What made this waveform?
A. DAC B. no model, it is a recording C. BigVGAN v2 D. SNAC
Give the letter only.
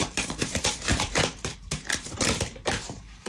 C